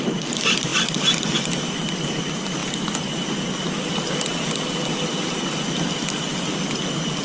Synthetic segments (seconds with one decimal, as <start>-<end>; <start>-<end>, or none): none